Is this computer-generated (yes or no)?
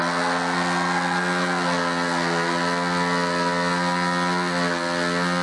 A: no